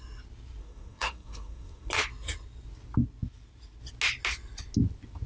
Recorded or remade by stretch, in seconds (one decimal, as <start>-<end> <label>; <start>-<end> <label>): 0.0-0.6 recorded; 0.6-1.9 remade; 1.9-5.3 recorded